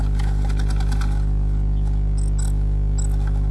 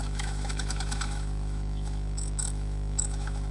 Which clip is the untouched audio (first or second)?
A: first